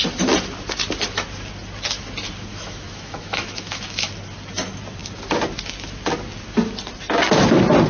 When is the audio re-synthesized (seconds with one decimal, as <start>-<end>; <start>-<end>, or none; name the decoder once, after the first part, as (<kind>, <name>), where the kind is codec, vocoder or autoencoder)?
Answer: 2.5-4.1 (autoencoder, DAC-VAE)